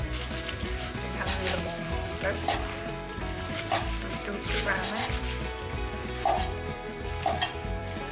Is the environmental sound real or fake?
fake